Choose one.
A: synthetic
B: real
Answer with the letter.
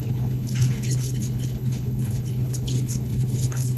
A